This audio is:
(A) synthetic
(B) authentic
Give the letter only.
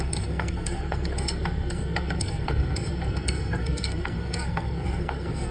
A